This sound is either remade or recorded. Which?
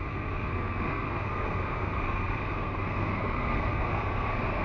remade